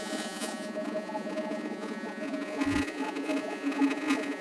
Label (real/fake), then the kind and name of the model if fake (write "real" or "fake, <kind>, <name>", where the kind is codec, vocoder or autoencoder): fake, vocoder, Vocos